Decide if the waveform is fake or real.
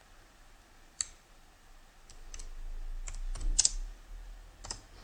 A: real